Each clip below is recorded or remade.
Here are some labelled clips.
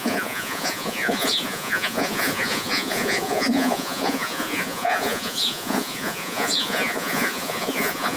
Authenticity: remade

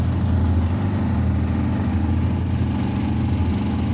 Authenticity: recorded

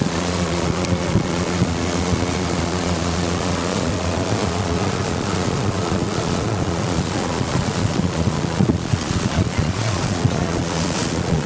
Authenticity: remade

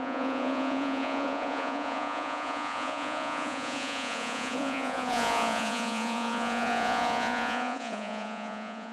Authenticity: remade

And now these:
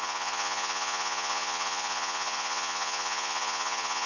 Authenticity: remade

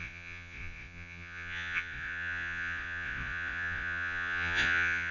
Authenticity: remade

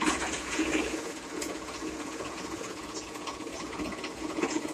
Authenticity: remade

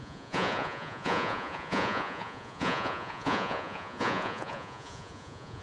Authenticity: remade